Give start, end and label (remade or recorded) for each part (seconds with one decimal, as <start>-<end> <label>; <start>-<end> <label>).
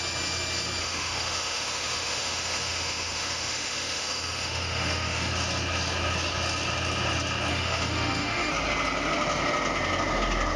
0.0-0.8 recorded; 0.8-5.3 remade; 5.3-7.5 recorded; 7.5-8.5 remade; 8.5-10.6 recorded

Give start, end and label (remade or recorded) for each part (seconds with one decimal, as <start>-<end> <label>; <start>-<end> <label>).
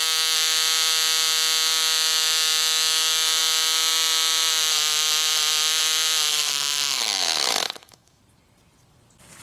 0.0-6.3 recorded; 6.3-8.2 remade; 8.2-9.4 recorded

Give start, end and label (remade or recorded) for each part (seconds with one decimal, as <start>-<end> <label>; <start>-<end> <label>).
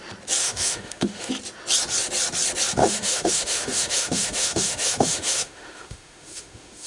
0.0-0.4 recorded; 0.4-1.3 remade; 1.3-2.8 recorded; 2.8-6.9 remade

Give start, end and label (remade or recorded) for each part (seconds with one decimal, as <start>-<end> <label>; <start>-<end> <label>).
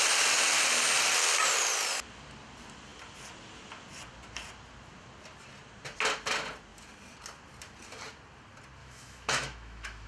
0.0-8.8 recorded; 8.8-10.1 remade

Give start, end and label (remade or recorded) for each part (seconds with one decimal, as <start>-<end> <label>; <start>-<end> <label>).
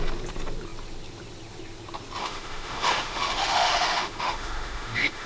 0.0-2.2 recorded; 2.2-5.3 remade